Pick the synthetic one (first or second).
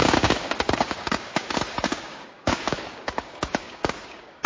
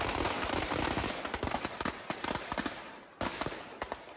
first